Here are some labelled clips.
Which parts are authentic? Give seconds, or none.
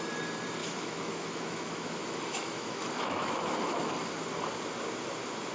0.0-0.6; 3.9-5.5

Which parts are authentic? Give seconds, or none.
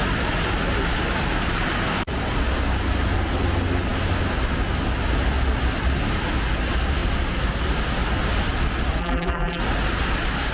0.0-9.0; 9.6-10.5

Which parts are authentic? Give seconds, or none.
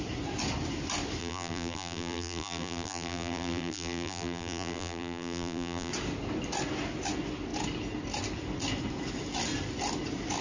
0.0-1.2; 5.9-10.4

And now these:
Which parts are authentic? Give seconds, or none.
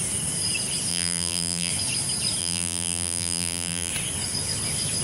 0.0-0.9; 1.7-2.4; 3.9-5.0